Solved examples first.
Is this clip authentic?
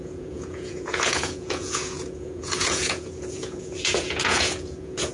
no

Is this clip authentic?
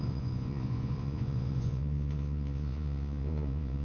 no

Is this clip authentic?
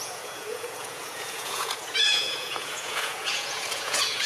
no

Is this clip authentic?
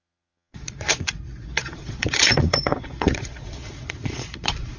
no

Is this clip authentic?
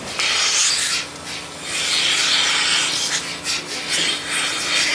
yes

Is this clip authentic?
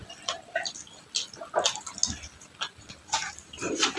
yes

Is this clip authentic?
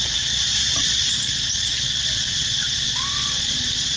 no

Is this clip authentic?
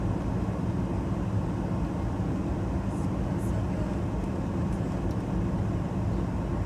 yes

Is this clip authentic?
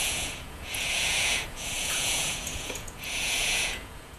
no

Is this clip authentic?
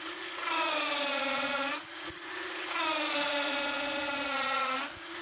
no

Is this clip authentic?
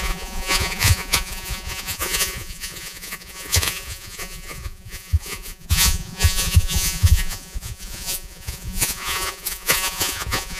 no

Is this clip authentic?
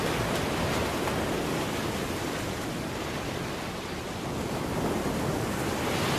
yes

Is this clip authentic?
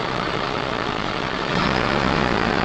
no